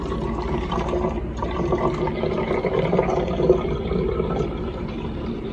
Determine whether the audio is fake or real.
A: fake